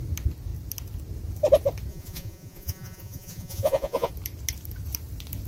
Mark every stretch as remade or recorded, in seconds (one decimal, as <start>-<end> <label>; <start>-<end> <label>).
0.0-1.9 recorded; 1.9-4.1 remade; 4.1-5.5 recorded